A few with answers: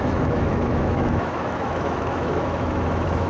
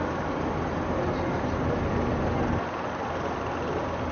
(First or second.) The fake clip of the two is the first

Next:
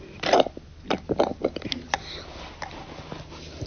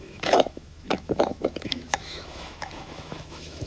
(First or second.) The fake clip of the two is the second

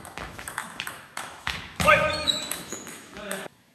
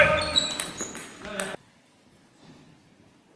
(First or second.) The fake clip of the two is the first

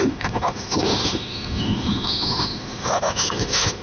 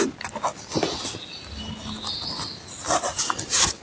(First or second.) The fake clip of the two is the first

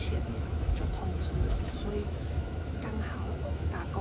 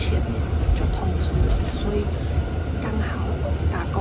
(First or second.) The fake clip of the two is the first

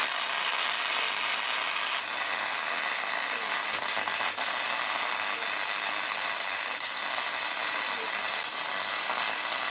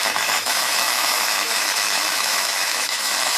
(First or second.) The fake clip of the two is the second